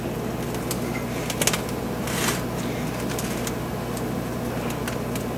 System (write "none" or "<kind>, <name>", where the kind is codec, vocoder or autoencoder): none